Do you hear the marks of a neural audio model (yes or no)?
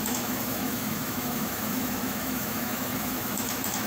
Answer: yes